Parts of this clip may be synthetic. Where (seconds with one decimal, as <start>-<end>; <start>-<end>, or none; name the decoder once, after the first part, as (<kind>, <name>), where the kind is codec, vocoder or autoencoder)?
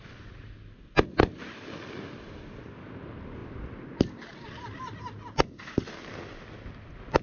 none